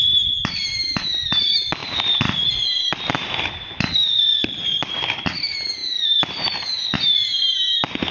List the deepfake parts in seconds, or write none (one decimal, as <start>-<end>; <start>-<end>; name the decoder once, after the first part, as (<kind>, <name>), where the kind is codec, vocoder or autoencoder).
0.0-0.6 (vocoder, BigVGAN v2); 1.8-3.0; 4.3-4.9; 5.8-7.5